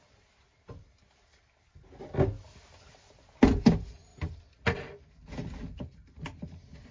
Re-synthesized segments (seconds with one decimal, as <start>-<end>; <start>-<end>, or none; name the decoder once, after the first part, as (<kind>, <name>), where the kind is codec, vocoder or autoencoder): none